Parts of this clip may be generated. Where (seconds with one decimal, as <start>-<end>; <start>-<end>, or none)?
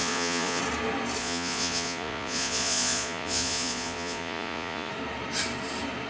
0.0-0.6; 1.2-4.9